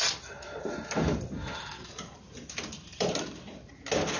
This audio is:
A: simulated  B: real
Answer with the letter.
B